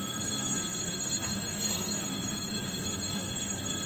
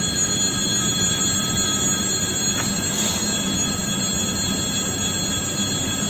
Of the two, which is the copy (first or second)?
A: first